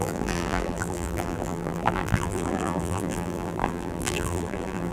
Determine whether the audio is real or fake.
fake